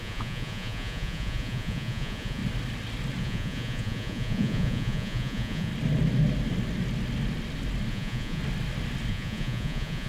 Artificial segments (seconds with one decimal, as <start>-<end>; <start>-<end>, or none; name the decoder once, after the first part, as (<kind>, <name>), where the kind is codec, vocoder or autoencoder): 0.0-2.4 (vocoder, Vocos); 3.2-5.7; 7.9-8.4; 9.1-10.1